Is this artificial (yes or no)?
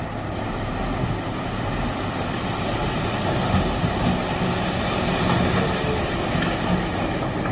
no